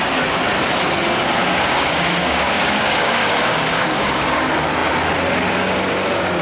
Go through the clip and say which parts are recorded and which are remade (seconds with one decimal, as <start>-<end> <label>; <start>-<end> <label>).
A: 0.0-1.4 recorded; 1.4-4.2 remade; 4.2-6.4 recorded